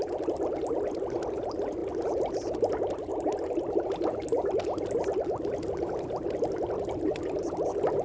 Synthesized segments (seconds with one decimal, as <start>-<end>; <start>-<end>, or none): none